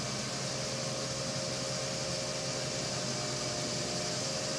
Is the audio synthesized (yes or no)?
no